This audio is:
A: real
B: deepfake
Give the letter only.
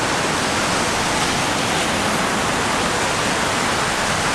A